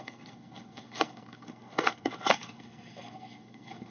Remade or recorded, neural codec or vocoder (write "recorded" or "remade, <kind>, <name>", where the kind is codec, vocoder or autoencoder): remade, codec, SNAC